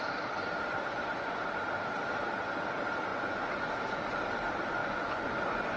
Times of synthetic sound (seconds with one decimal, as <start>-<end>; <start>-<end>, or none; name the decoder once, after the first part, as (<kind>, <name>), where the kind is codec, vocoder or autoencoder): 0.9-1.4 (vocoder, Vocos); 3.1-3.7; 4.8-5.8